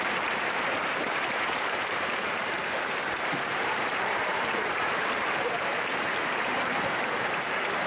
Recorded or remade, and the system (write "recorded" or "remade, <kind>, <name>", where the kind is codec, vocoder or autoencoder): remade, vocoder, BigVGAN v2